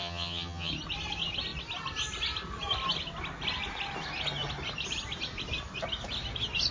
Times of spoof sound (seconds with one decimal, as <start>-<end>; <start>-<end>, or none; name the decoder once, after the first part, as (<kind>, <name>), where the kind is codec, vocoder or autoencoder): 0.0-0.7 (vocoder, HiFi-GAN)